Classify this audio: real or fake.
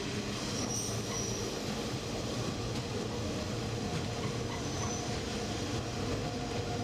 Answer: real